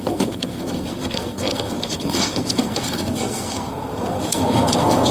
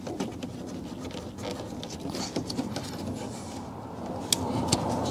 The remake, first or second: first